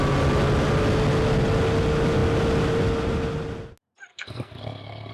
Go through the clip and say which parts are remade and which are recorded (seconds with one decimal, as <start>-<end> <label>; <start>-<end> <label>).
0.0-4.1 recorded; 4.1-5.1 remade